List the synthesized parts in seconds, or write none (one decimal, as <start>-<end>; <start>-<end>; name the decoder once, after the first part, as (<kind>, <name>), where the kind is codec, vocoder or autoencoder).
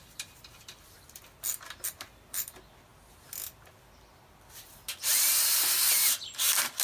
none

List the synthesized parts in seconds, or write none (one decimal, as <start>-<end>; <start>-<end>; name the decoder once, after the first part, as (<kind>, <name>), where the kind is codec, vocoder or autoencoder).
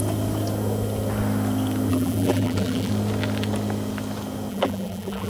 1.9-2.9 (vocoder, BigVGAN v2); 4.5-5.3